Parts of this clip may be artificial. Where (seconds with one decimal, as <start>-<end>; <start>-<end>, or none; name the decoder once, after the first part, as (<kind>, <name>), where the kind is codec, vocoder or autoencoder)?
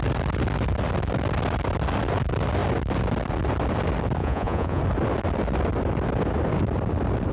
4.2-4.8 (vocoder, Vocos)